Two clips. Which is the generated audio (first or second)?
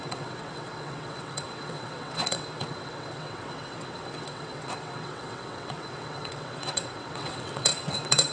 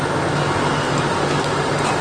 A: first